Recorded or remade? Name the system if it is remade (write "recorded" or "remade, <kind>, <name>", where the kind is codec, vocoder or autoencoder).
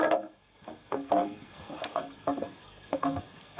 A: remade, codec, SNAC